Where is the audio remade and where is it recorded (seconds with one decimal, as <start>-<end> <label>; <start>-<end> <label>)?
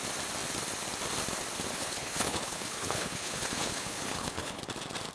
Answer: 0.0-1.7 recorded; 1.7-4.6 remade; 4.6-5.1 recorded